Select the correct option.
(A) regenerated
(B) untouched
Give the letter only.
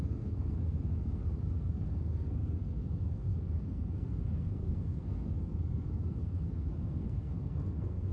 A